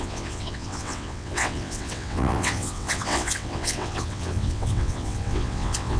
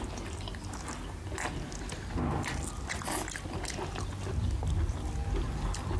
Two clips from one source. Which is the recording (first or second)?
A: second